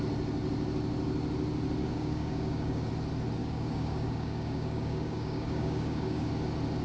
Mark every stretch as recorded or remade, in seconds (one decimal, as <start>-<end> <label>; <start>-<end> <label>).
0.0-1.8 recorded; 1.8-2.9 remade; 2.9-3.4 recorded; 3.4-6.3 remade; 6.3-6.8 recorded